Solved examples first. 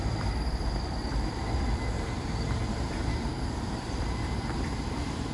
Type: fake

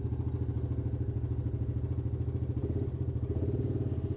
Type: real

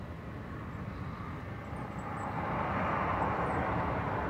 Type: real